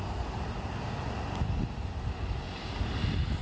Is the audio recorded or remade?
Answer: recorded